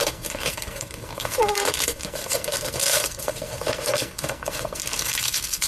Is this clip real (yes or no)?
no